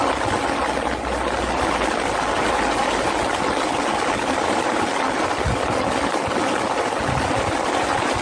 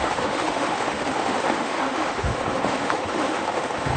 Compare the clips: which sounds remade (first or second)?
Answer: second